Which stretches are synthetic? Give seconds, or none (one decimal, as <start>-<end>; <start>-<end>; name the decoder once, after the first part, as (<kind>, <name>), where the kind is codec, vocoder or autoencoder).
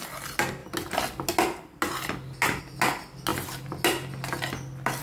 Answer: none